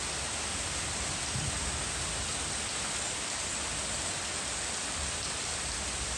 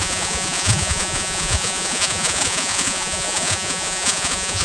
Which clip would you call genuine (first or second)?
first